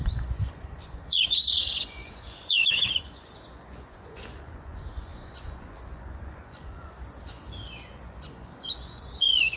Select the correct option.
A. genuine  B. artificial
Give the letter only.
B